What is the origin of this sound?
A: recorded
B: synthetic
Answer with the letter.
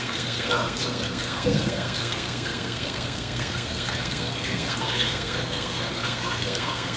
B